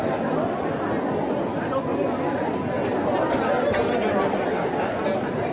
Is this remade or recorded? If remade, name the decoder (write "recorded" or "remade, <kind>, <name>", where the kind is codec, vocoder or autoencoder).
recorded